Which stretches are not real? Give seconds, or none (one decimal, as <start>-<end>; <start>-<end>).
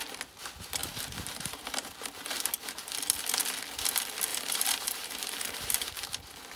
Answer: 0.8-2.5; 4.3-6.0